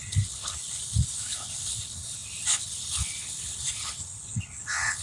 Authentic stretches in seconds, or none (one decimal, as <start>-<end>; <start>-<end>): none